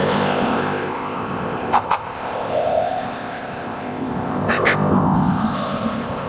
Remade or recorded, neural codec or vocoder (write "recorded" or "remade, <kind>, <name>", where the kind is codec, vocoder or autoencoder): remade, codec, ZipCodec